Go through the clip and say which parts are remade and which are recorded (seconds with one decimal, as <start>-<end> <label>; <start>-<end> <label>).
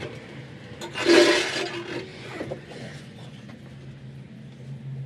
0.0-2.1 recorded; 2.1-3.5 remade; 3.5-5.1 recorded